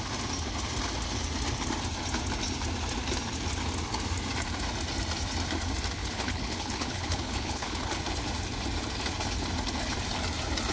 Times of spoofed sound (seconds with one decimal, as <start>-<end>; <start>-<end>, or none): 6.0-8.0

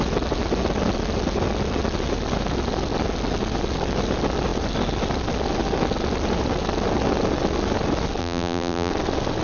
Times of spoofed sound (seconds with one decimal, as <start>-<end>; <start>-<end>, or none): 8.2-8.9

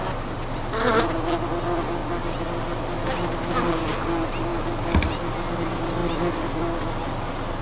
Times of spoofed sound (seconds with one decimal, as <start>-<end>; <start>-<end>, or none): none